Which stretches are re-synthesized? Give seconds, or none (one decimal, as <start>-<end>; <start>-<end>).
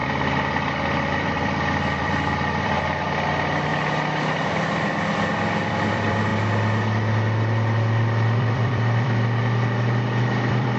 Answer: 0.0-3.7; 5.7-6.3; 8.4-10.8